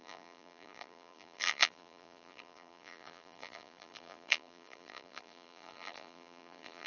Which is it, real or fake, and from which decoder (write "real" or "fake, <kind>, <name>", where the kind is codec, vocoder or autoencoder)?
fake, vocoder, BigVGAN v2